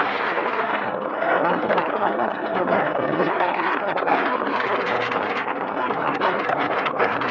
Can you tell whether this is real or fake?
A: fake